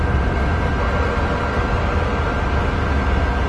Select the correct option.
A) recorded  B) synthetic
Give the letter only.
A